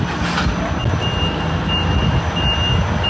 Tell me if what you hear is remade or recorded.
recorded